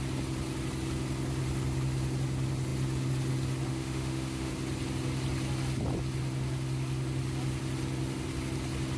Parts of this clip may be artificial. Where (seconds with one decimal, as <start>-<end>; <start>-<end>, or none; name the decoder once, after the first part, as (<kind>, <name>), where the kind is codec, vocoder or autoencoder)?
3.7-4.5 (autoencoder, DAC-VAE)